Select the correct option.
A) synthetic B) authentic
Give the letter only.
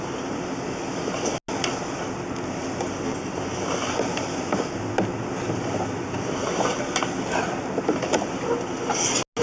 B